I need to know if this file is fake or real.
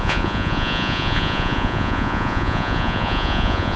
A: fake